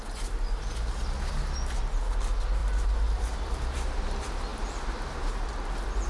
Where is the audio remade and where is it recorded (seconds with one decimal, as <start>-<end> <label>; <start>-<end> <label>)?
0.0-2.6 recorded; 2.6-3.9 remade; 3.9-4.5 recorded; 4.5-5.4 remade; 5.4-6.1 recorded